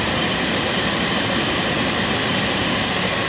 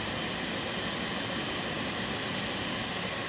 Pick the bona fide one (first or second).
second